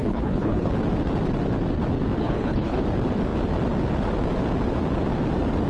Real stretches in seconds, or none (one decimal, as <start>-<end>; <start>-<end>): 0.7-2.2; 2.8-5.7